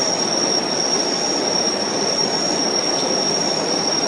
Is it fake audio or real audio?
real